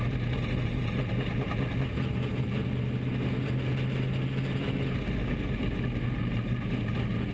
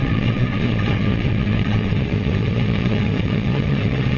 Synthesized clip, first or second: second